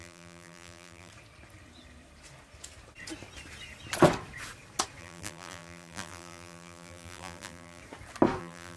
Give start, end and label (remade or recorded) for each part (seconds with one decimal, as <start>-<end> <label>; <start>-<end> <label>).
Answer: 0.0-1.1 remade; 1.1-5.0 recorded; 5.0-7.8 remade; 7.8-8.4 recorded; 8.4-8.8 remade